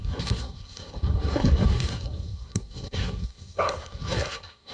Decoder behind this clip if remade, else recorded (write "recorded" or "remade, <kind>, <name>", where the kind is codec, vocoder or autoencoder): remade, codec, SNAC